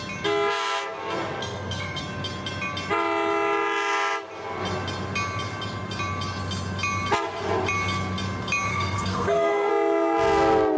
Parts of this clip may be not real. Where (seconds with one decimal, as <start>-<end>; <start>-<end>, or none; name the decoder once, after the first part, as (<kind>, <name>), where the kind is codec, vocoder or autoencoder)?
1.4-2.0 (codec, SNAC); 8.7-9.7